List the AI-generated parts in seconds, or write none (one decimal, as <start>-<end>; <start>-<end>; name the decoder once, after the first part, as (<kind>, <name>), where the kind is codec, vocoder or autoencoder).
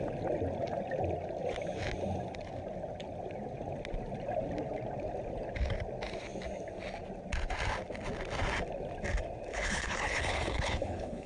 9.5-11.3 (codec, HILCodec)